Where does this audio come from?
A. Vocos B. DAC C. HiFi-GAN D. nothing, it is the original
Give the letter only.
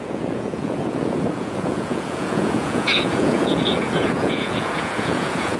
A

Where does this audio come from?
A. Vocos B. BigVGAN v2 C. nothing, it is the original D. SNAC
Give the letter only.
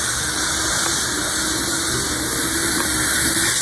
C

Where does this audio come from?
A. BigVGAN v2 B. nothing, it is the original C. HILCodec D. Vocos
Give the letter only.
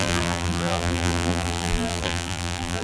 A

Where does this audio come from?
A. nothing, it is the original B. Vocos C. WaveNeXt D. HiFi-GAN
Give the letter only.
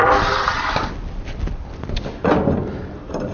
A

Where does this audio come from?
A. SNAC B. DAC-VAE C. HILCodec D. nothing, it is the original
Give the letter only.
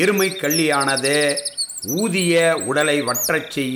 D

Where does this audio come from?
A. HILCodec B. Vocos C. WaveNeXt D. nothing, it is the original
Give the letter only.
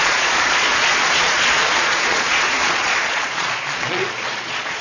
B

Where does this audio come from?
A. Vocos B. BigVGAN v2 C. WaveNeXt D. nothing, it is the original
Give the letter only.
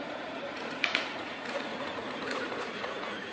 A